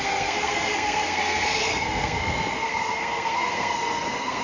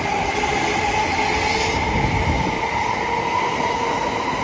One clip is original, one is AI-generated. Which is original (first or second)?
second